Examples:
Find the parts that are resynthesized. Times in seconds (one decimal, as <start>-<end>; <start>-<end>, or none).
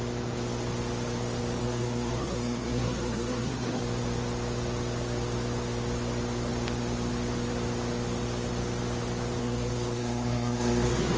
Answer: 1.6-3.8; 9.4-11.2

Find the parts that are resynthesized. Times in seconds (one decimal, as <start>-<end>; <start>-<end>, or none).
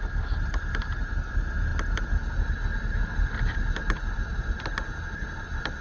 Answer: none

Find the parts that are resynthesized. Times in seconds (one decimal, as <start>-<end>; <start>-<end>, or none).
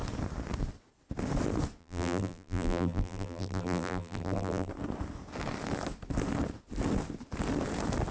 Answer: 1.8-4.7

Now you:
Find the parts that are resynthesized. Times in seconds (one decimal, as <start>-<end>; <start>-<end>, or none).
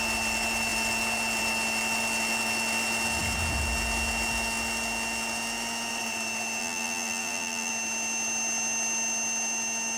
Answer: 6.6-7.7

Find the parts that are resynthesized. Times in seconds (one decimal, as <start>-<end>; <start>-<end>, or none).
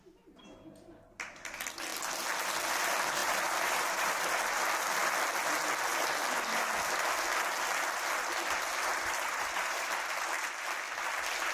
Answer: 3.2-4.2; 8.9-9.9